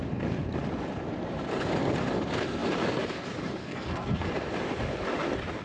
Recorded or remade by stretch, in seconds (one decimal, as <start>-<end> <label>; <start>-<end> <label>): 0.0-3.6 recorded; 3.6-4.3 remade; 4.3-5.6 recorded